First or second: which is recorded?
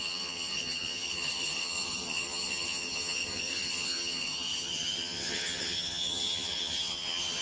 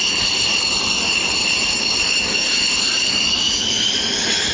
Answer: second